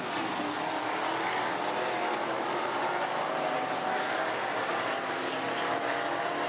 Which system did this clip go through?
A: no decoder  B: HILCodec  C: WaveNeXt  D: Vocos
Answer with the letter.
A